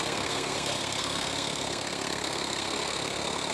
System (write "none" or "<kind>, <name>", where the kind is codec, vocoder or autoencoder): codec, SNAC